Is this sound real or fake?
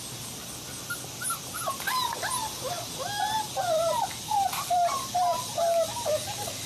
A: real